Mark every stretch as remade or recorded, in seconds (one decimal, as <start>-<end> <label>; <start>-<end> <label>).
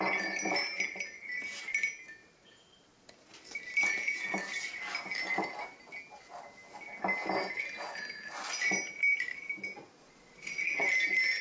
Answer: 0.0-10.0 recorded; 10.0-10.8 remade; 10.8-11.4 recorded